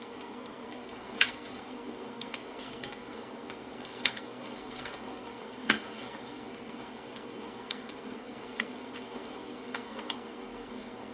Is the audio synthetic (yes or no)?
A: yes